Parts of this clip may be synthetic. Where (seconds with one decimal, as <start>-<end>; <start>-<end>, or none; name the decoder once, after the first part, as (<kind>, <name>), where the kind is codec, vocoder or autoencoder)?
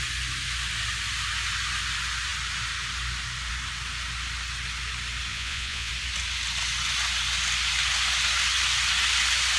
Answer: 5.3-5.9 (vocoder, Vocos)